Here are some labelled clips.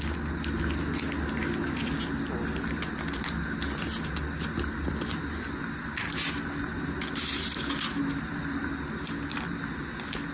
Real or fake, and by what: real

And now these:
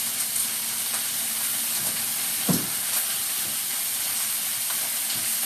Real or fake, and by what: real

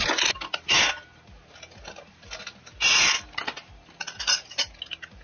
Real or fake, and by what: real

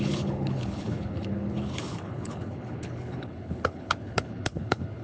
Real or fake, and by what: fake, codec, HILCodec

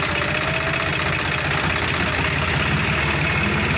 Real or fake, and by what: real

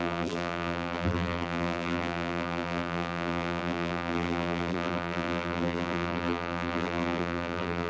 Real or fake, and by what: fake, vocoder, BigVGAN v2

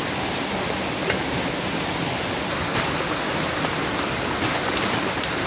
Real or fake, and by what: real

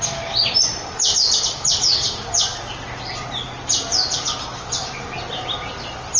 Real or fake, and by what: real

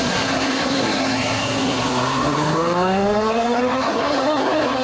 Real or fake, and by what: fake, codec, SNAC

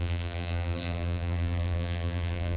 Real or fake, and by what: fake, vocoder, BigVGAN v2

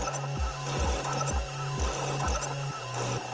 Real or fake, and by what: real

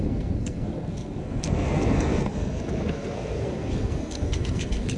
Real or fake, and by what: fake, codec, SNAC